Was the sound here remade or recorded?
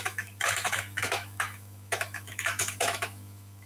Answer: remade